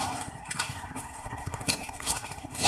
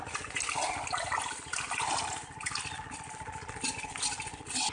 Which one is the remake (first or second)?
first